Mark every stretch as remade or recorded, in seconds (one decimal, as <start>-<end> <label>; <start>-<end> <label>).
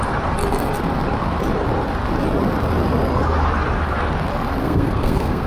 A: 0.0-4.6 recorded; 4.6-5.5 remade